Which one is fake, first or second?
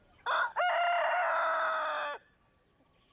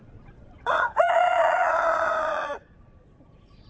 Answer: second